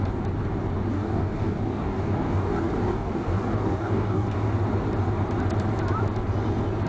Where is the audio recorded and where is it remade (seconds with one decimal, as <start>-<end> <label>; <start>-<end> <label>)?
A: 0.0-0.9 recorded; 0.9-4.5 remade; 4.5-6.9 recorded